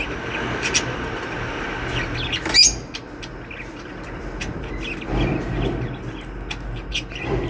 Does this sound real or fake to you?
real